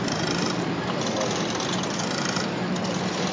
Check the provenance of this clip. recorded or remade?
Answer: recorded